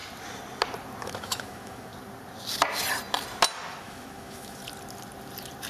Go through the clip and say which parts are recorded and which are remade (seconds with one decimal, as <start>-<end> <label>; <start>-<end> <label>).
0.0-1.0 recorded; 1.0-1.9 remade; 1.9-3.8 recorded; 3.8-4.6 remade; 4.6-5.7 recorded